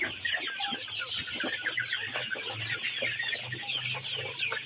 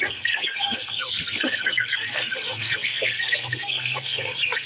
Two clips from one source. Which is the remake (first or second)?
second